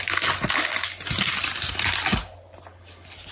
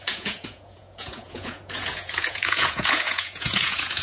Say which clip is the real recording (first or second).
first